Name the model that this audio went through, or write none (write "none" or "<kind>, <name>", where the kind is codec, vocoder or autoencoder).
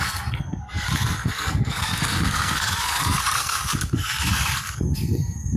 codec, SNAC